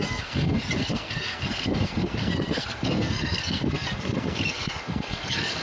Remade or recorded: remade